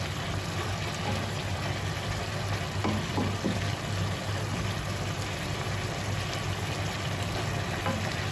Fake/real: real